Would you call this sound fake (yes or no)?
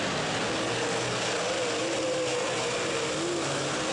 no